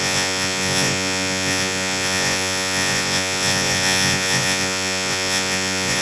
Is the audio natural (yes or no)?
no